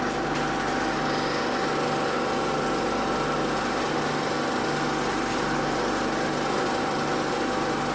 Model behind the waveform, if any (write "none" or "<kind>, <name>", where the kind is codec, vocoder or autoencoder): none